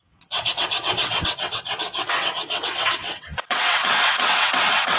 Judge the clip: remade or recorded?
remade